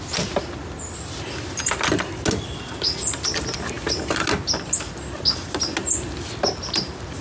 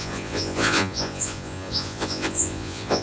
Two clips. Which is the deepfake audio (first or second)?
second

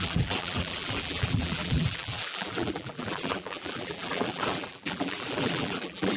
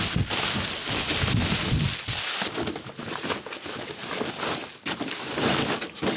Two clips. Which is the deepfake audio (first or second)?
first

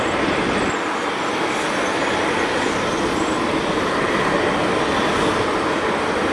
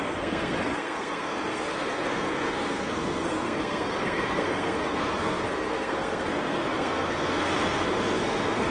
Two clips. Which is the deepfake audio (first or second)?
second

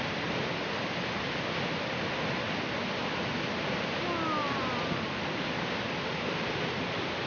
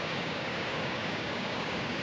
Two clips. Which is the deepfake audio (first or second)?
second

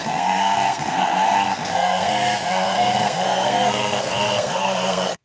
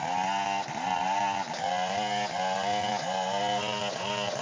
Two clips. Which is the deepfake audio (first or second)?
first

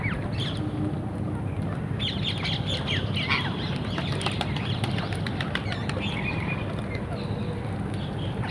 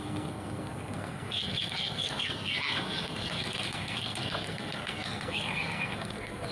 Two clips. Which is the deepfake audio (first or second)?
second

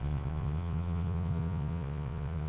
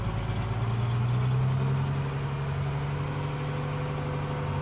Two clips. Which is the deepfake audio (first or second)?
first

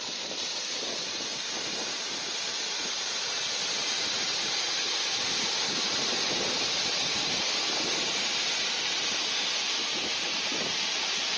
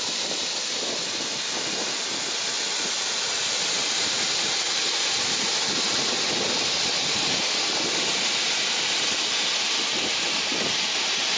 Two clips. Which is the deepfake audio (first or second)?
first